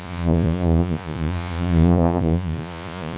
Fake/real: fake